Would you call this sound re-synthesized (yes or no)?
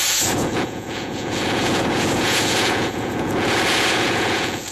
yes